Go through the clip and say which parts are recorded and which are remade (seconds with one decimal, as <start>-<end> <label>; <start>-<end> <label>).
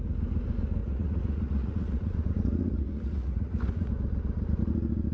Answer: 0.0-0.8 recorded; 0.8-3.9 remade; 3.9-5.1 recorded